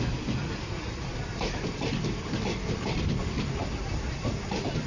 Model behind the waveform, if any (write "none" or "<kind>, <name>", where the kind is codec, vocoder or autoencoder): none